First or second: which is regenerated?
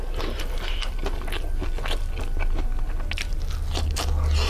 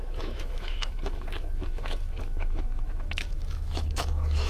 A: second